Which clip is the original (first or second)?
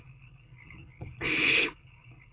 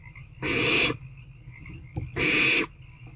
second